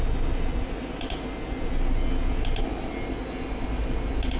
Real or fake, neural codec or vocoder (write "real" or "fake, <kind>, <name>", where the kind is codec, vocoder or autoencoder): real